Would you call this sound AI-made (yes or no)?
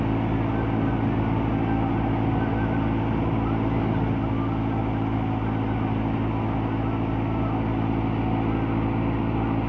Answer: no